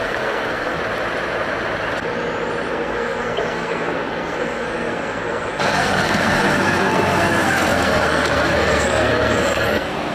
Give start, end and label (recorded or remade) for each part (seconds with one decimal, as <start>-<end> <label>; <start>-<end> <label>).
0.0-0.8 remade; 0.8-2.7 recorded; 2.7-10.1 remade